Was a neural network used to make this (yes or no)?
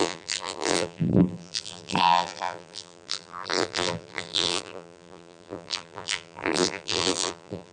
yes